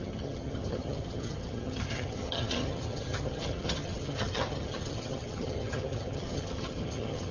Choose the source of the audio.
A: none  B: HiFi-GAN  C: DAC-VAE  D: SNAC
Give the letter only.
B